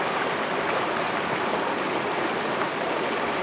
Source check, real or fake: real